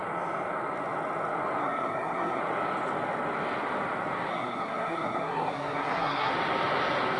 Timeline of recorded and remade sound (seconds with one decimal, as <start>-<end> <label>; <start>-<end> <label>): 0.0-1.6 recorded; 1.6-2.4 remade; 2.4-4.3 recorded; 4.3-6.3 remade; 6.3-7.2 recorded